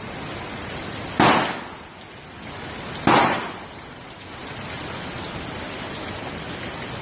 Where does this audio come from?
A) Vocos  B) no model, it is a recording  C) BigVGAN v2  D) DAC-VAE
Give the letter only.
B